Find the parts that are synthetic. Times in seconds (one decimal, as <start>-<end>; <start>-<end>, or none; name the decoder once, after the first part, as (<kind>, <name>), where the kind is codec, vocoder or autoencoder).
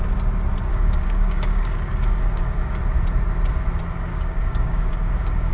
0.7-2.8 (codec, DAC); 4.1-5.5